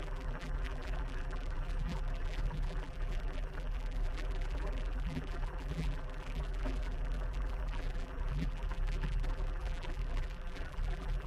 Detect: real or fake fake